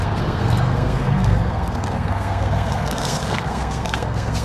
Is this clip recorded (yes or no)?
no